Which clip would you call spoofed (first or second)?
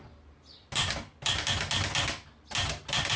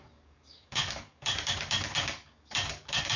second